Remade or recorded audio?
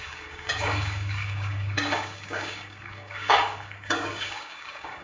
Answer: remade